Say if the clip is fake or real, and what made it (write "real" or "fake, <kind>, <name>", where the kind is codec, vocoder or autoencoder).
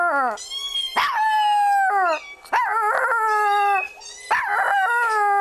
real